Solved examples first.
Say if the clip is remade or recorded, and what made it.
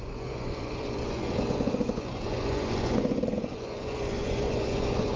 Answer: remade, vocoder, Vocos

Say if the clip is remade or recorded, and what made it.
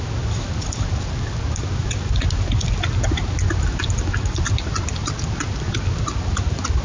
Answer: recorded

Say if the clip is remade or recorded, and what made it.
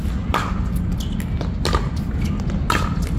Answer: recorded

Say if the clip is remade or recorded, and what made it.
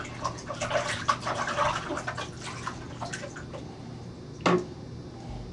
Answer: recorded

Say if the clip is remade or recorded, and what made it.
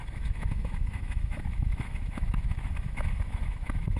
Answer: remade, autoencoder, DAC-VAE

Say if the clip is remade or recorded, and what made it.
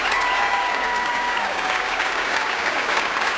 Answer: remade, codec, DAC